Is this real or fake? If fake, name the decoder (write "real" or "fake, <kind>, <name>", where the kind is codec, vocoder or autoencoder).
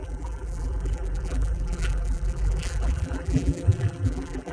fake, vocoder, BigVGAN v2